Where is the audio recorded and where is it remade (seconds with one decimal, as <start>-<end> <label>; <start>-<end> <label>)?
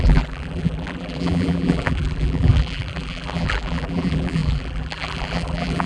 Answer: 0.0-5.9 remade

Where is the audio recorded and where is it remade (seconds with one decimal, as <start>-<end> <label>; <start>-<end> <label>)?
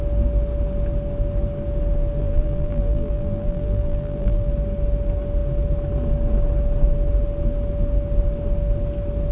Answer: 0.0-2.2 recorded; 2.2-4.5 remade; 4.5-9.3 recorded